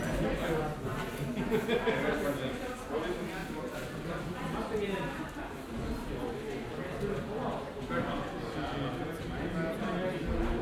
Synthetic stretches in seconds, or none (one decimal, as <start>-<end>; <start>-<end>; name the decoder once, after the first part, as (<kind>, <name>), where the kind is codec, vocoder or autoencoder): none